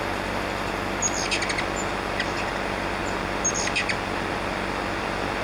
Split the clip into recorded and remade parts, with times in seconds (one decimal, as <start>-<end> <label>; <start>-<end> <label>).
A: 0.0-5.4 recorded

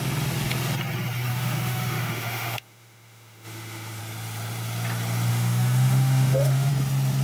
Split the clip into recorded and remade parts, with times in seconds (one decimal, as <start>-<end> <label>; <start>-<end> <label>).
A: 0.0-1.3 recorded; 1.3-4.0 remade; 4.0-5.3 recorded; 5.3-6.7 remade; 6.7-7.2 recorded

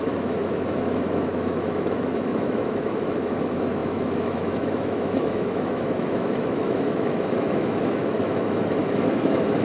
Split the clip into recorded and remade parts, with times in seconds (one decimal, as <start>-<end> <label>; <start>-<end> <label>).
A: 0.0-9.6 remade

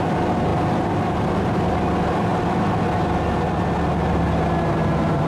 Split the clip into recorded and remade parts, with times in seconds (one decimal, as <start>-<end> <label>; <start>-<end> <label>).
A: 0.0-5.3 recorded